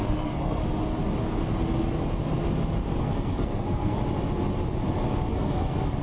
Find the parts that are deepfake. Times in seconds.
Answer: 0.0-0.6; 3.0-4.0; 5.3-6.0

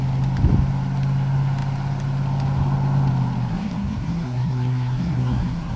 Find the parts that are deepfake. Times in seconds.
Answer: 3.5-5.8

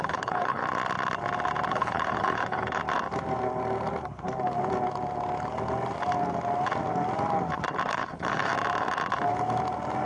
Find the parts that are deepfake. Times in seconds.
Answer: 0.0-0.6; 1.7-2.8; 7.9-8.5

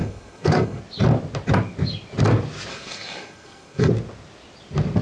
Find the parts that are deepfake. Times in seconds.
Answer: 0.0-0.8; 2.7-3.9

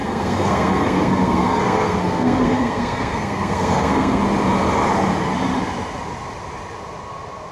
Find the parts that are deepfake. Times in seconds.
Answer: 0.0-4.2

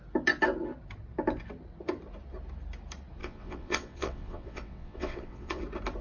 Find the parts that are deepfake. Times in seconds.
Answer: 3.2-5.6

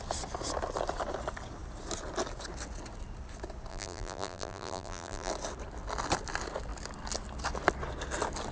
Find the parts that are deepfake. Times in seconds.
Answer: 3.7-5.3